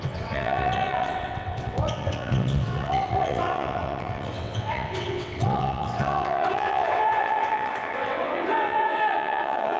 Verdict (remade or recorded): remade